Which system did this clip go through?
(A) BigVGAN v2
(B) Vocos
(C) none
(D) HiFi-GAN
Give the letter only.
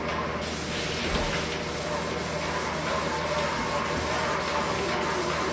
C